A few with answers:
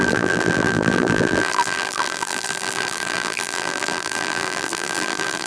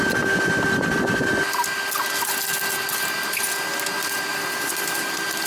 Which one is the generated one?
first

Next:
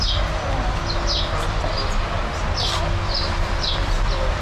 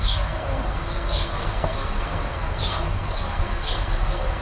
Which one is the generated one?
second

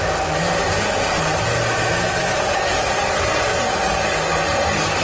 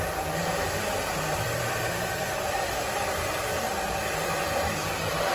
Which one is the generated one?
second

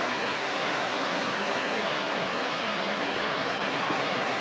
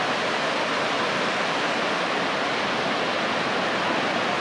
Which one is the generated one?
first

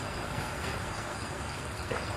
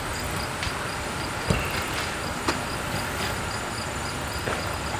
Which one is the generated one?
first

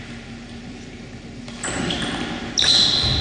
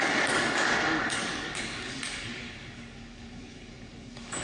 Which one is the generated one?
second